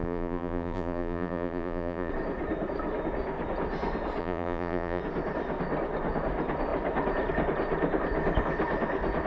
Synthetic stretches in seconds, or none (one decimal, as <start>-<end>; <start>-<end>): 0.0-2.1; 4.2-5.0